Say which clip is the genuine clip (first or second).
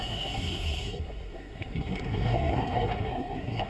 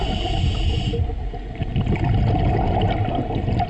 second